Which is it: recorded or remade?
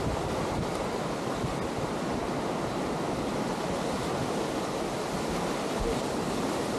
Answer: recorded